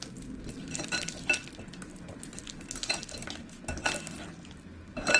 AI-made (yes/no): no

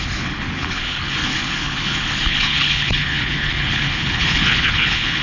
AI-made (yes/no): yes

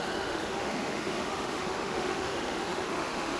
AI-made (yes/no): yes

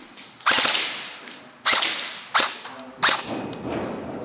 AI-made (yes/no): no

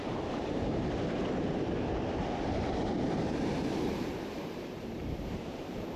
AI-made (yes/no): yes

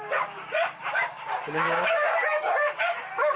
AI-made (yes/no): yes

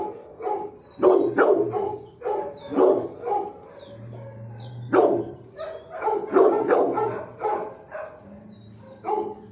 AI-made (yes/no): no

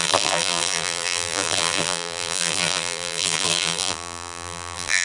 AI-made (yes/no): yes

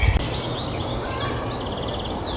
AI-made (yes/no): no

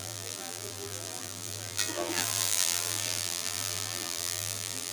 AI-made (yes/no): yes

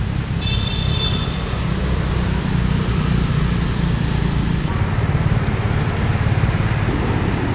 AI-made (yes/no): no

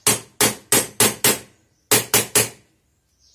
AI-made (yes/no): no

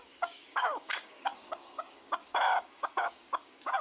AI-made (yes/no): yes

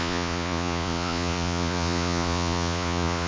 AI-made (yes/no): yes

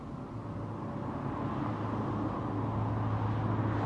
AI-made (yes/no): no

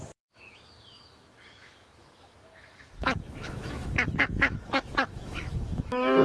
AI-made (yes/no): yes